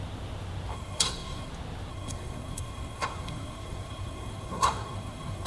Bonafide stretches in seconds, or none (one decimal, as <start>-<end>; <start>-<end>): 0.0-0.7; 1.5-1.9